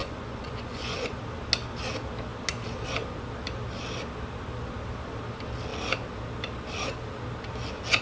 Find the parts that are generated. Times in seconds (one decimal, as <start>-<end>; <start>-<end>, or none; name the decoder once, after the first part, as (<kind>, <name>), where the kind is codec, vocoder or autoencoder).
0.0-1.2 (vocoder, Vocos)